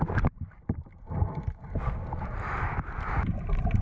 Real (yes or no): yes